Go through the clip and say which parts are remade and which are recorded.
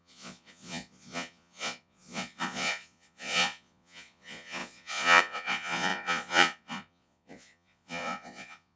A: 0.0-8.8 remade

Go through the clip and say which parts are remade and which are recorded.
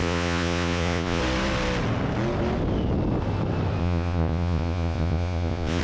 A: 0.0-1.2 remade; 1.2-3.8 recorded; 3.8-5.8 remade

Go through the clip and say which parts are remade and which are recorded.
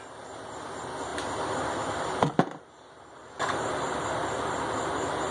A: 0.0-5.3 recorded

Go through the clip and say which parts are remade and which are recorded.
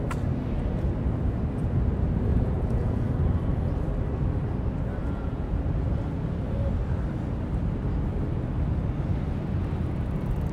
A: 0.0-2.3 recorded; 2.3-3.1 remade; 3.1-5.0 recorded; 5.0-5.5 remade; 5.5-10.5 recorded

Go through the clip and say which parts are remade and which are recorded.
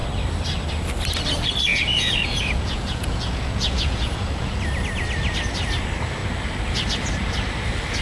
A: 0.0-1.7 recorded; 1.7-4.5 remade; 4.5-8.0 recorded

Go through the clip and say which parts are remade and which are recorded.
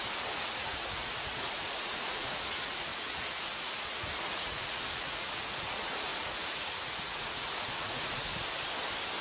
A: 0.0-8.3 remade; 8.3-9.2 recorded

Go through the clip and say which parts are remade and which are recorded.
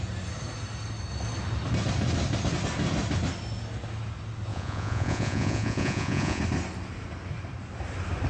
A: 0.0-4.5 recorded; 4.5-6.4 remade; 6.4-8.3 recorded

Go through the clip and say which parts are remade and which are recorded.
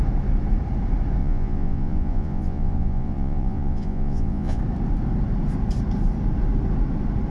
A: 0.0-1.2 recorded; 1.2-4.6 remade; 4.6-7.3 recorded